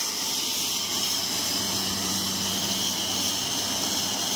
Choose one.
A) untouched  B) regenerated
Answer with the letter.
A